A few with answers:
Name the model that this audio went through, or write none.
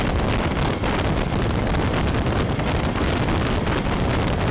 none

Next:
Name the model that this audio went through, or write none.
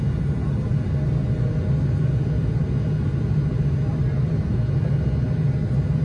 none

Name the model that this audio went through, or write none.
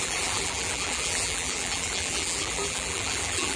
vocoder, BigVGAN v2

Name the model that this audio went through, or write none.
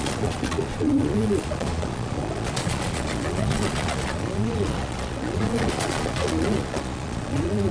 vocoder, Vocos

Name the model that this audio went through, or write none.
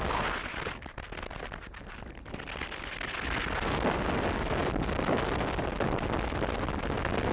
none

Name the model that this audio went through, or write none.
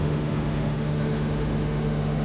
autoencoder, DAC-VAE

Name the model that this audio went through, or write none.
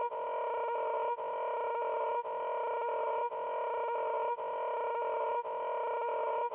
none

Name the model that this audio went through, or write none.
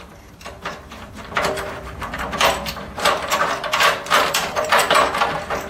vocoder, BigVGAN v2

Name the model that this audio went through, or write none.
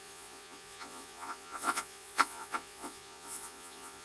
vocoder, Vocos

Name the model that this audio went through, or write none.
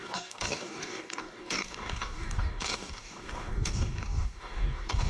codec, DAC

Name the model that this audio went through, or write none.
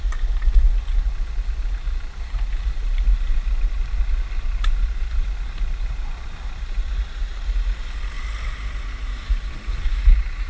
none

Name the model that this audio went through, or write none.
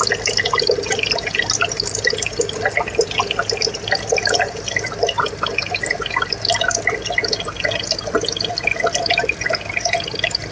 none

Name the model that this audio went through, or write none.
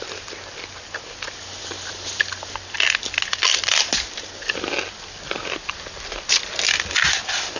none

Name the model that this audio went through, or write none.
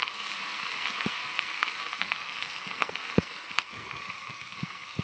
codec, SNAC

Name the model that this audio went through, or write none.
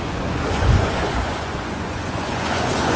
vocoder, Vocos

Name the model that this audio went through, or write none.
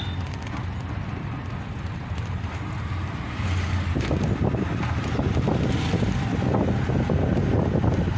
none